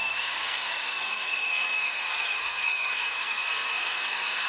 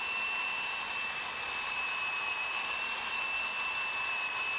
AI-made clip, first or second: first